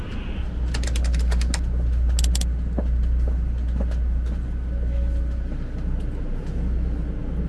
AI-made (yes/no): no